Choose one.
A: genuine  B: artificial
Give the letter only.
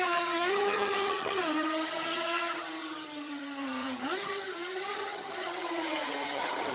B